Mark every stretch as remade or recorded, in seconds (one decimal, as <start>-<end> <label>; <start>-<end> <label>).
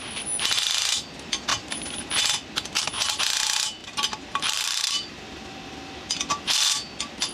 0.0-3.8 recorded; 3.8-5.1 remade; 5.1-7.3 recorded